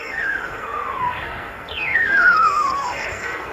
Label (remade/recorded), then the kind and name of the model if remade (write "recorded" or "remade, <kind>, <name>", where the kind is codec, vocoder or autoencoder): remade, codec, SNAC